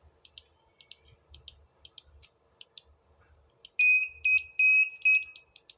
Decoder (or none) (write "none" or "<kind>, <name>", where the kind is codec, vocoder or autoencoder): none